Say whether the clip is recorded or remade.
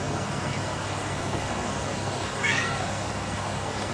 remade